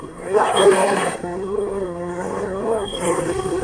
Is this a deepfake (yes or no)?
yes